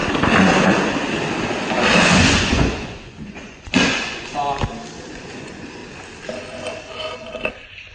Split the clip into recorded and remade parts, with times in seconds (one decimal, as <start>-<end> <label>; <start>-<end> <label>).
0.0-2.0 recorded; 2.0-4.4 remade; 4.4-5.1 recorded; 5.1-5.8 remade; 5.8-7.5 recorded; 7.5-7.9 remade